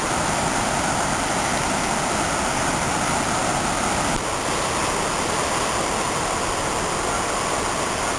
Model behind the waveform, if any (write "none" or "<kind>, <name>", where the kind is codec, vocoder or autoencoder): none